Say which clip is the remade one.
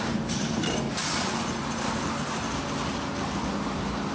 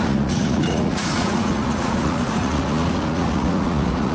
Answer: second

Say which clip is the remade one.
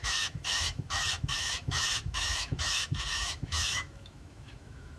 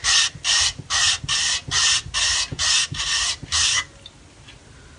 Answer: first